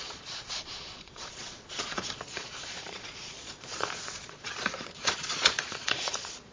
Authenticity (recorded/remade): remade